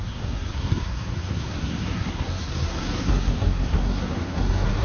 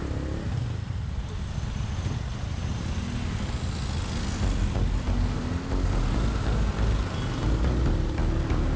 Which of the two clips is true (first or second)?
second